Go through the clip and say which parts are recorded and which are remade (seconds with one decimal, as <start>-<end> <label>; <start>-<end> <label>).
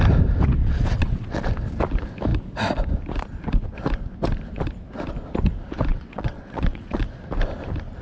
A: 0.0-0.6 recorded; 0.6-1.5 remade; 1.5-5.9 recorded; 5.9-7.0 remade; 7.0-8.0 recorded